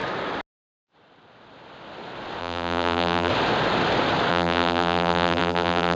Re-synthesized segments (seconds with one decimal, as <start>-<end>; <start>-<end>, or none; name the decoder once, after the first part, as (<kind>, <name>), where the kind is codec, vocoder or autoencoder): 2.4-3.3 (vocoder, BigVGAN v2); 4.3-6.0